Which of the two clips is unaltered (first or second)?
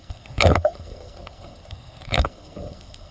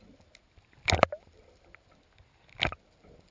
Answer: second